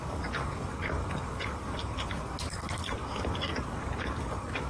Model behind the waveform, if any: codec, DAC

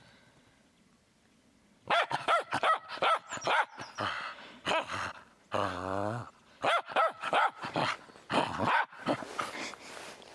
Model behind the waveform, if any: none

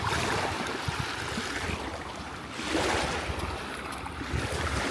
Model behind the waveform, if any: none